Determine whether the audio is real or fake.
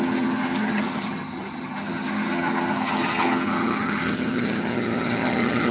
fake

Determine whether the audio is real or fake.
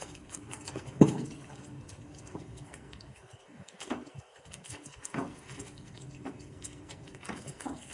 fake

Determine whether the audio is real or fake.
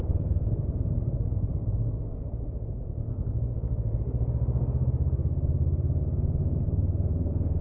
fake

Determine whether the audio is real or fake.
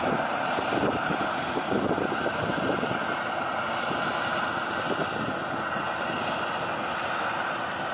real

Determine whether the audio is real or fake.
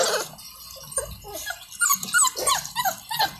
real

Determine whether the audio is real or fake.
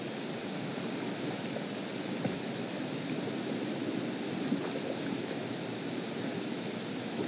real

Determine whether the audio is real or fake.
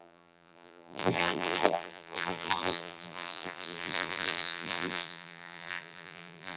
fake